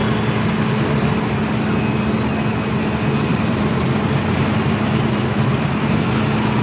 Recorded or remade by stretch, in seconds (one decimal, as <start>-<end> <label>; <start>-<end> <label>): 0.0-3.3 recorded; 3.3-5.8 remade; 5.8-6.6 recorded